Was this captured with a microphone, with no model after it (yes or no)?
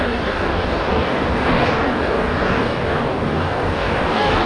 no